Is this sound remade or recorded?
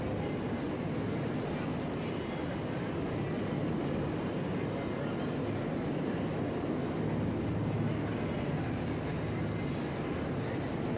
recorded